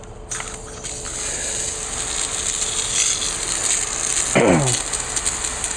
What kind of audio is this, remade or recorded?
recorded